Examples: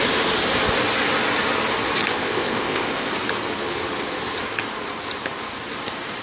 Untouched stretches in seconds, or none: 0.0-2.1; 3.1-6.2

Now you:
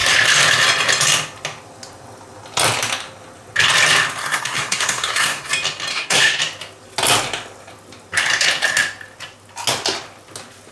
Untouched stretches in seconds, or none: 0.0-4.2; 5.5-5.9; 6.4-10.7

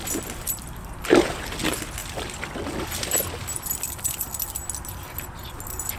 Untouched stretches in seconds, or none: 1.2-6.0

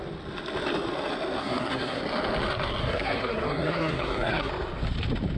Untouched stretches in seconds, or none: 0.0-1.4; 2.0-2.8; 4.5-5.4

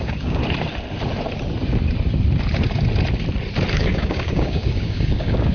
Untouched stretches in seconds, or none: 0.4-3.7

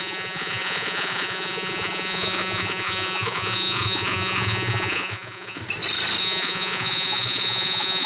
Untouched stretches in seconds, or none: 5.6-6.2

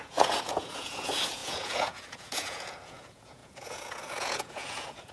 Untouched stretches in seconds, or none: none